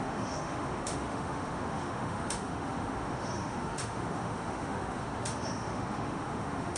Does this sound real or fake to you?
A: fake